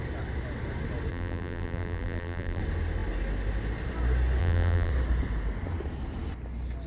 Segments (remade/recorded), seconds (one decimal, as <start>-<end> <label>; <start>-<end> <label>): 0.0-1.1 recorded; 1.1-2.6 remade; 2.6-4.4 recorded; 4.4-4.9 remade; 4.9-6.9 recorded